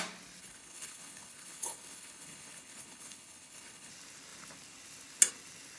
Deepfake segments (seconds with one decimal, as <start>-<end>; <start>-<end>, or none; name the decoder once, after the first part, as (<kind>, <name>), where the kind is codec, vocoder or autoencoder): 0.4-3.9 (codec, HILCodec)